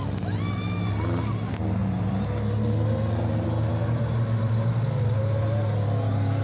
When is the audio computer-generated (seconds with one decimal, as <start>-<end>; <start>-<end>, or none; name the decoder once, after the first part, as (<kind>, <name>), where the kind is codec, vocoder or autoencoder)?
none